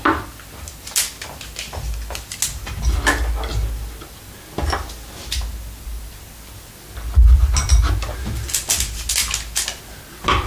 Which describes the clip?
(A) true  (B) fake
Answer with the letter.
A